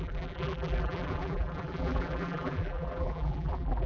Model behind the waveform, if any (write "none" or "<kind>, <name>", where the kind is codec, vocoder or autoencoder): vocoder, BigVGAN v2